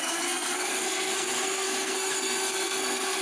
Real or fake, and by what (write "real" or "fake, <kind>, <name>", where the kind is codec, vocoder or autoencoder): fake, codec, SNAC